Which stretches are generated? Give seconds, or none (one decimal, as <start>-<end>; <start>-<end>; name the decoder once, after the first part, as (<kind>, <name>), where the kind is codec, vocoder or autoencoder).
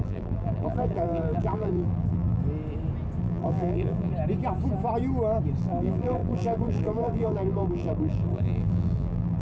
0.0-2.4 (vocoder, BigVGAN v2); 3.2-4.1; 5.6-9.4